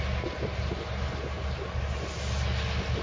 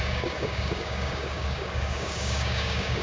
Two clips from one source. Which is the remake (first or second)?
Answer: second